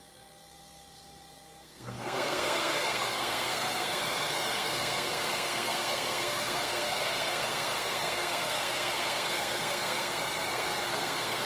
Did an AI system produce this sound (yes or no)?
yes